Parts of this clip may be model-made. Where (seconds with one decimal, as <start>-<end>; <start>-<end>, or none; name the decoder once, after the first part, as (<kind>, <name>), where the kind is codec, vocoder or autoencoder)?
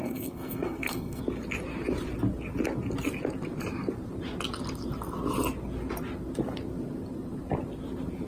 0.0-1.2 (codec, SNAC)